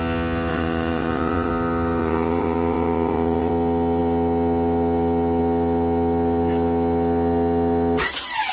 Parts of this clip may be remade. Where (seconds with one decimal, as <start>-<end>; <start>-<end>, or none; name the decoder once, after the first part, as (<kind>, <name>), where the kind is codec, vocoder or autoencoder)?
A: 0.5-1.5 (vocoder, Vocos); 2.0-3.5